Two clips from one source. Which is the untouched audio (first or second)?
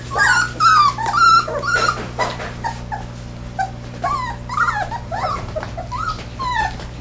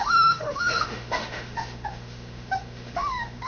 first